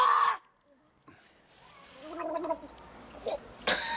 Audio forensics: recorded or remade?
recorded